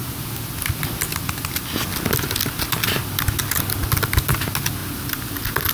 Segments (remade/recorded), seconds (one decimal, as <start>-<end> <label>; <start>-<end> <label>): 0.0-5.7 recorded